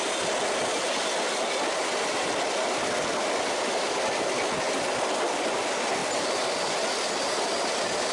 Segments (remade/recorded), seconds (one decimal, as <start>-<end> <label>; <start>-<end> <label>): 0.0-8.1 recorded